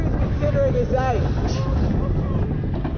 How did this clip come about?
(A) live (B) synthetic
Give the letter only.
A